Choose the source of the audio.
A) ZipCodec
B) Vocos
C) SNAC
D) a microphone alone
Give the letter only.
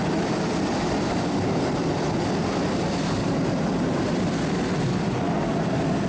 D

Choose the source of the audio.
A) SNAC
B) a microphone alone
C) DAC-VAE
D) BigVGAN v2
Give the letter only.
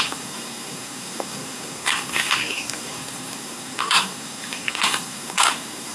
A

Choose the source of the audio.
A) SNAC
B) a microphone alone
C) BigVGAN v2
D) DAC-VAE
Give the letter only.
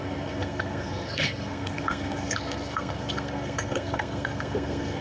A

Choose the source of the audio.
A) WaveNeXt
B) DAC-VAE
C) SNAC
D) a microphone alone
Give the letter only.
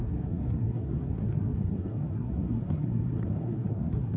C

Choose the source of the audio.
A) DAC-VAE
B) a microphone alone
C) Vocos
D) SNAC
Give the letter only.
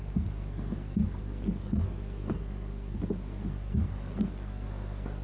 D